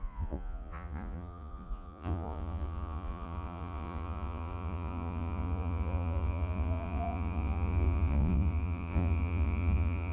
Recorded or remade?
remade